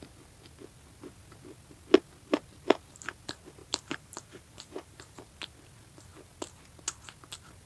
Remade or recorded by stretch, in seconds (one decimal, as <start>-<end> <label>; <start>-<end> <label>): 0.0-3.6 recorded; 3.6-5.2 remade; 5.2-7.7 recorded